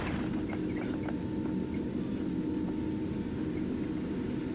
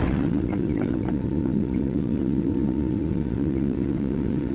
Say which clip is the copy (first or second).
second